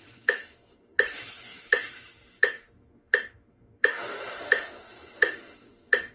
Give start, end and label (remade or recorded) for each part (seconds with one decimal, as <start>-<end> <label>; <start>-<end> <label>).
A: 0.0-6.1 remade